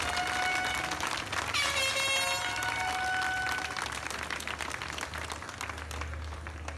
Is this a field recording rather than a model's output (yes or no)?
yes